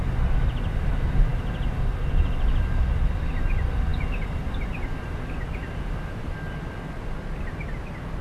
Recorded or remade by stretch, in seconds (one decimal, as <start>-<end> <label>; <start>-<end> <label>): 0.0-8.2 recorded